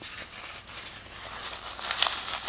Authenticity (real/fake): real